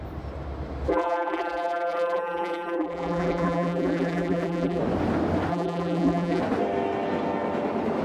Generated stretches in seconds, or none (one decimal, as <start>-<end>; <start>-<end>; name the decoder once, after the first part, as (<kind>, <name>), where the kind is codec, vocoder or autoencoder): 0.9-4.8 (vocoder, BigVGAN v2); 5.5-6.4